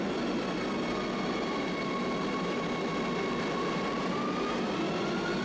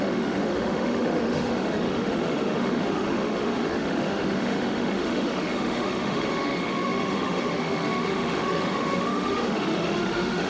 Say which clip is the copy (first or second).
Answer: second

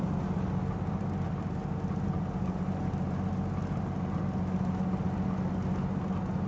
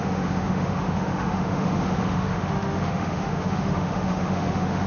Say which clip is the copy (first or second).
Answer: second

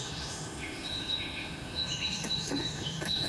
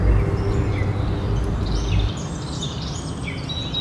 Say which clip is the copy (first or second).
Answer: first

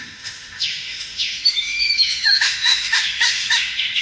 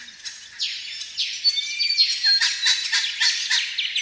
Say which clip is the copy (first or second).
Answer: first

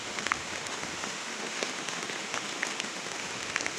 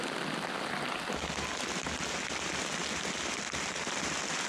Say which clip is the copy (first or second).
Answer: first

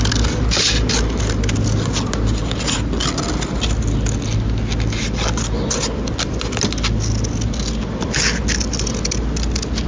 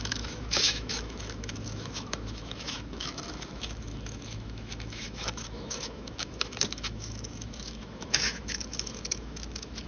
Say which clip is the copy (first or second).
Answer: second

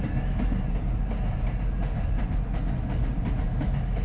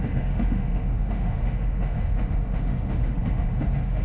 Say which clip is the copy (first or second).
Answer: second